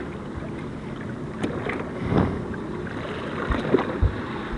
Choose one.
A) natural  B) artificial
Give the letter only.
A